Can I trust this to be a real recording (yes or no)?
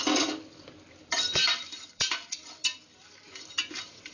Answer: no